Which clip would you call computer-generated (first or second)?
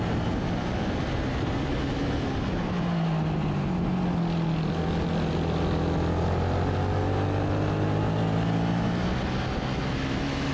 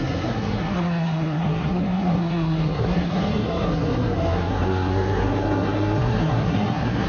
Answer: second